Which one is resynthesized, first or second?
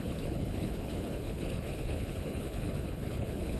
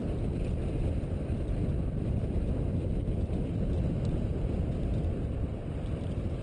first